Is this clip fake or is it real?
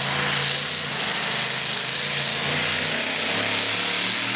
real